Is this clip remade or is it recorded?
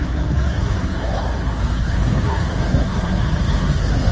remade